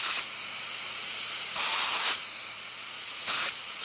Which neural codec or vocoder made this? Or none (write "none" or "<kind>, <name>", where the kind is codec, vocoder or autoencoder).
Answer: vocoder, Vocos